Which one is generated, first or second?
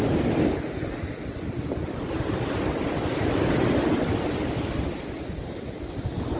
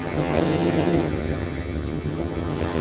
second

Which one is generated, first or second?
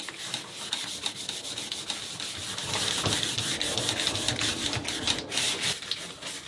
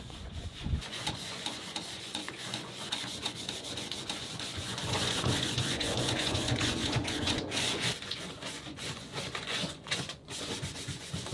second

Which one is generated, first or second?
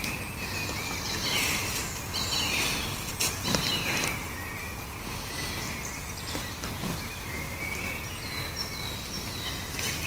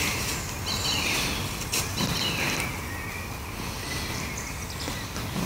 second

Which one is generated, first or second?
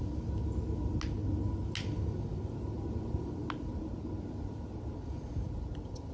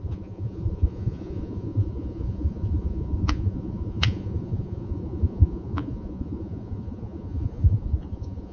second